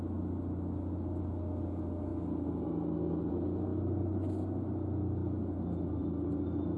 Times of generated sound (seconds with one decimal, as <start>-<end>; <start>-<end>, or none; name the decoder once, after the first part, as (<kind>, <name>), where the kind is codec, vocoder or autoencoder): none